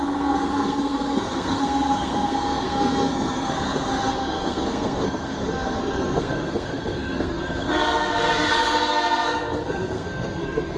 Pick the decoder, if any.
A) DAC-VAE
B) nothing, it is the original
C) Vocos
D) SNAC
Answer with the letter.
D